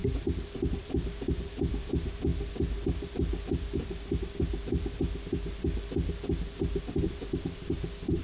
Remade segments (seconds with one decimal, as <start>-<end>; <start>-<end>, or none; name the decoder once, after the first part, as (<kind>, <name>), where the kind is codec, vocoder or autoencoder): 0.7-2.3 (vocoder, BigVGAN v2); 7.2-8.2